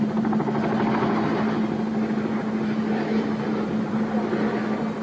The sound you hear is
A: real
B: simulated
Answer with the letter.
A